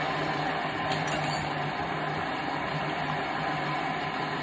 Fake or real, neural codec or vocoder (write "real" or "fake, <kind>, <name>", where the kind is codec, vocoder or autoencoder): real